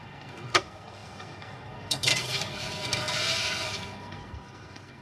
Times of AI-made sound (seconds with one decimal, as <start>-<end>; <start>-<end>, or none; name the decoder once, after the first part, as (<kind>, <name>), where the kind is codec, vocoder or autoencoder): 0.0-5.0 (codec, SNAC)

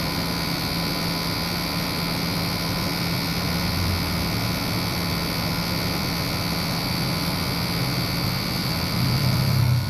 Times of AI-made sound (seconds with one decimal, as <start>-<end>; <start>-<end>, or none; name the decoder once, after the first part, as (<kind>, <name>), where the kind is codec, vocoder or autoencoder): 8.6-9.9 (vocoder, BigVGAN v2)